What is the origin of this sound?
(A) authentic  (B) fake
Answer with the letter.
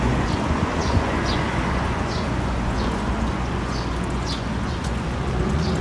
B